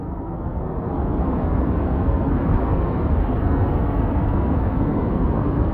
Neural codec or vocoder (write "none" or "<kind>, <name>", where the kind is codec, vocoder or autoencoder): codec, SNAC